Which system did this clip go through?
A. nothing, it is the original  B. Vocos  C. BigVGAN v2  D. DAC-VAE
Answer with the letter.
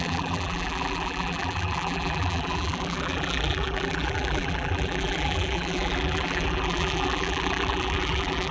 C